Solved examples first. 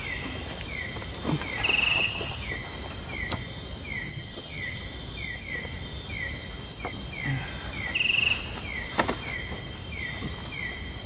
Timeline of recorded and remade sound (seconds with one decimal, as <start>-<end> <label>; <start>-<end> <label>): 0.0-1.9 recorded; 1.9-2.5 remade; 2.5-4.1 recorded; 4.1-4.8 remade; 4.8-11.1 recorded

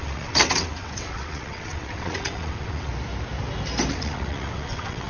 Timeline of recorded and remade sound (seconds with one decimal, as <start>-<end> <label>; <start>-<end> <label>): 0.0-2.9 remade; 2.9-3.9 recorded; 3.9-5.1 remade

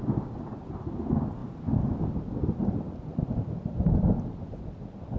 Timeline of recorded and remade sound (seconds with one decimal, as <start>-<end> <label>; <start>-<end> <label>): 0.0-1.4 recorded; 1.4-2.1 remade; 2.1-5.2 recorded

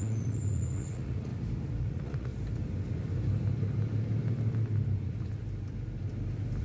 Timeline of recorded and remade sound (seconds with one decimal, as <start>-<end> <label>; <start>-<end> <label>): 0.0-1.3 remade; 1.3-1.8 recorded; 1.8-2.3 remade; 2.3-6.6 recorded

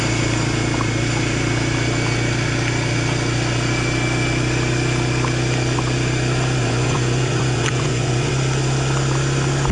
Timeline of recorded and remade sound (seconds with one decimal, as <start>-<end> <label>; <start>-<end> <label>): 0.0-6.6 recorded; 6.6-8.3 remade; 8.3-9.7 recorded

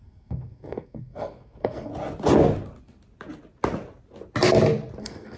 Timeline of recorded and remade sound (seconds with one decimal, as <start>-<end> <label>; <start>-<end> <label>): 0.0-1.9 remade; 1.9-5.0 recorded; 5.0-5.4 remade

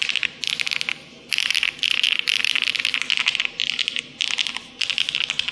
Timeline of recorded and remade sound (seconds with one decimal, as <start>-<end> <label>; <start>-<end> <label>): 0.0-5.5 recorded